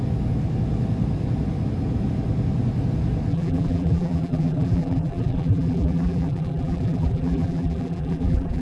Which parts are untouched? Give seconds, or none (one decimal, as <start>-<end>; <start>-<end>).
0.0-3.3